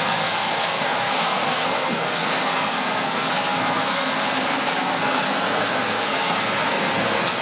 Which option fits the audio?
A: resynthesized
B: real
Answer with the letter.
A